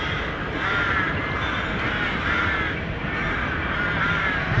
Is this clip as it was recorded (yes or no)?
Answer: yes